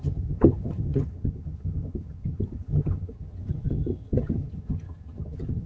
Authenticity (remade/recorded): remade